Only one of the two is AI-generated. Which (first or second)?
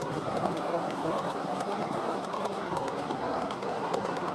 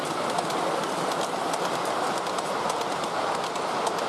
first